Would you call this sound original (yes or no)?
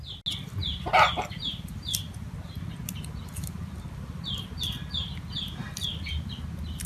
yes